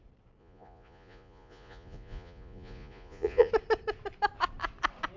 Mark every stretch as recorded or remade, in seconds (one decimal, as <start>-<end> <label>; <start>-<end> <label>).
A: 0.0-0.4 recorded; 0.4-3.5 remade; 3.5-5.2 recorded